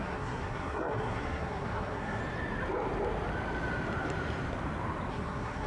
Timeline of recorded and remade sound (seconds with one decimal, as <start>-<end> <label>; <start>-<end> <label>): 0.0-2.2 remade; 2.2-5.1 recorded; 5.1-5.7 remade